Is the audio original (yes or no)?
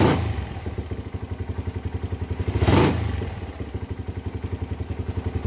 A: yes